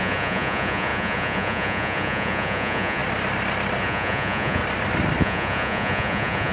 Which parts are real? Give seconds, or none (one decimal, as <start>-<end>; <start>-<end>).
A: 3.0-3.8; 4.6-5.2